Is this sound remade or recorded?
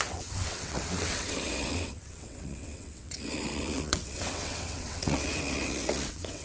remade